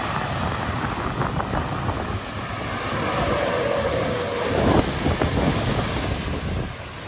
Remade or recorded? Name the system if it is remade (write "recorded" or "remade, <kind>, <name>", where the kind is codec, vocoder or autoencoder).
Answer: recorded